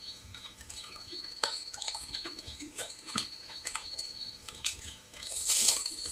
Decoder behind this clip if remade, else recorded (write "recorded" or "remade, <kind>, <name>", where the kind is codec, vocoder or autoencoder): remade, autoencoder, DAC-VAE